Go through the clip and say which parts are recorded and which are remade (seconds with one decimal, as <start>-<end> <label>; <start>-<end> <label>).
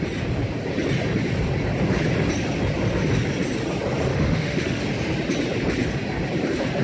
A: 0.0-4.1 recorded; 4.1-4.8 remade; 4.8-6.8 recorded